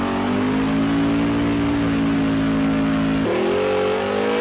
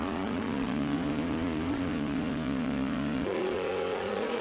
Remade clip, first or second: second